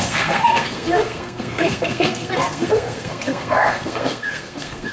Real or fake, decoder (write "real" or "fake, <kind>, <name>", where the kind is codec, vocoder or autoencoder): fake, codec, SNAC